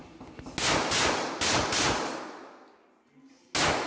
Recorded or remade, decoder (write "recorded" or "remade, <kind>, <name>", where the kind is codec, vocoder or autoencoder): recorded